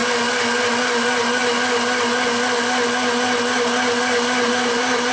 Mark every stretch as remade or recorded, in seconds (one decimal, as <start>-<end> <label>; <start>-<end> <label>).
0.0-0.6 recorded; 0.6-1.4 remade; 1.4-4.5 recorded; 4.5-5.1 remade